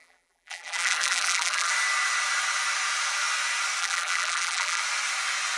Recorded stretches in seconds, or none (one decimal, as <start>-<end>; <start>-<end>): 1.7-3.8; 4.8-5.6